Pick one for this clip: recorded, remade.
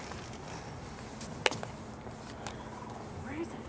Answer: recorded